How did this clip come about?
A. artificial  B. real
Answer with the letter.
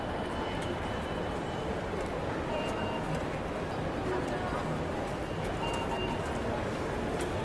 B